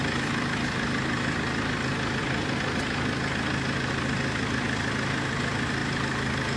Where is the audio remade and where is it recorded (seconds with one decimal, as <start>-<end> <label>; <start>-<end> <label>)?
0.0-6.6 recorded